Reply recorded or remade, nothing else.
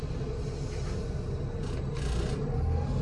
recorded